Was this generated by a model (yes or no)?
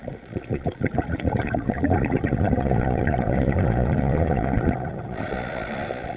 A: yes